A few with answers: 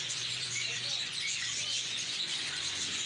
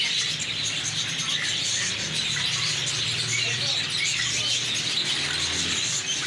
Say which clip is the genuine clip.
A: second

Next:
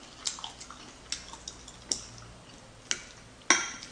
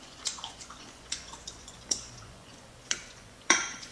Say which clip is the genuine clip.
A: first